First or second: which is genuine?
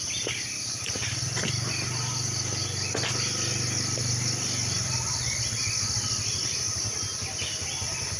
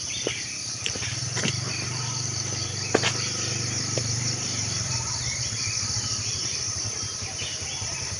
first